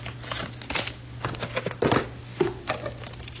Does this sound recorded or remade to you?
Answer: recorded